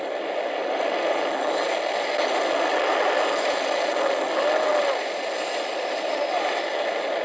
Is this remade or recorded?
recorded